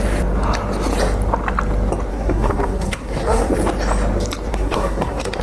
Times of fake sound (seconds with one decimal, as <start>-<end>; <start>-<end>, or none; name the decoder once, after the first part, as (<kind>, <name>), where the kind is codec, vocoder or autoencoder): 2.1-3.5 (codec, SNAC); 4.5-5.4